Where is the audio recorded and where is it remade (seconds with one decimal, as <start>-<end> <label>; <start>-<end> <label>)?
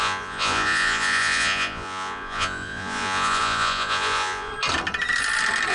0.0-4.5 remade; 4.5-5.7 recorded